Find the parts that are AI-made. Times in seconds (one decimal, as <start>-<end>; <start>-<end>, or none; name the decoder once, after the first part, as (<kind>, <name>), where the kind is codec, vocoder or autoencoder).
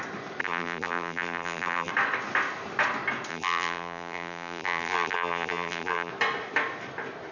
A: 0.4-1.9 (vocoder, BigVGAN v2); 3.3-6.1